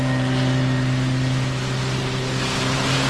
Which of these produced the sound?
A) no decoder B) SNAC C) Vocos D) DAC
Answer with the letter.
A